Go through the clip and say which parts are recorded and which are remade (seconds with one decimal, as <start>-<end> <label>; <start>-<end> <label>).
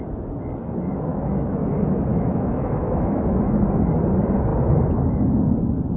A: 0.0-1.1 recorded; 1.1-1.6 remade; 1.6-2.1 recorded; 2.1-3.4 remade; 3.4-6.0 recorded